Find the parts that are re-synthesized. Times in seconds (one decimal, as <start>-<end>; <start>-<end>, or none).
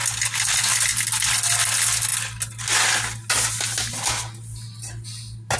none